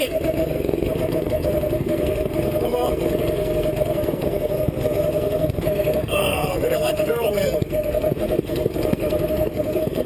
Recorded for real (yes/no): no